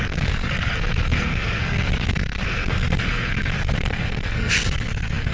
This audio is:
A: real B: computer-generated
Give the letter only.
B